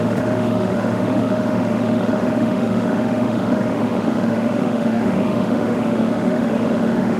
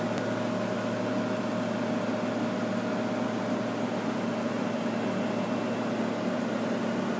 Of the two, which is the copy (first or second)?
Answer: first